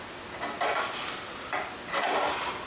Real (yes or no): yes